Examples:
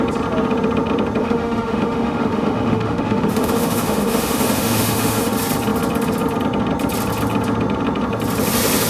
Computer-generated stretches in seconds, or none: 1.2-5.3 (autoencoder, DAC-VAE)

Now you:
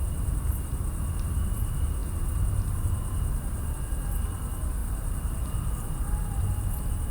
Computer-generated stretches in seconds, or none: 4.8-6.2 (vocoder, BigVGAN v2)

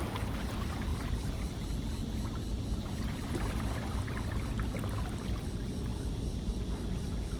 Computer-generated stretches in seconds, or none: 0.9-1.5 (vocoder, BigVGAN v2); 2.0-4.4; 5.9-6.5